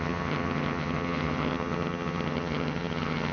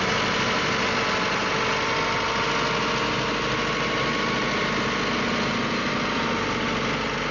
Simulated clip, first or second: first